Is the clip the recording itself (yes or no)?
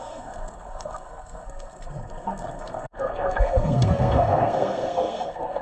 no